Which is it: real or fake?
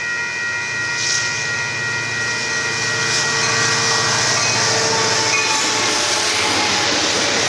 real